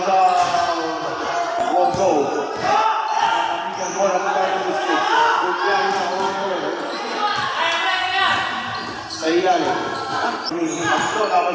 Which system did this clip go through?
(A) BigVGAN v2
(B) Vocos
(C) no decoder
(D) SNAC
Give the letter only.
C